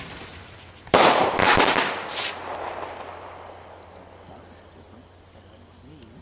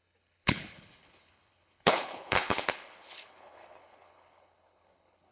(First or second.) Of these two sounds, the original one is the first